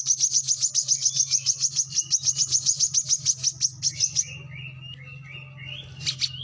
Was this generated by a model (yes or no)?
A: no